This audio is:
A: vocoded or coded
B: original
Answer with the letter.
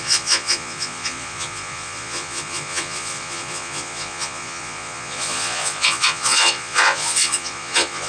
A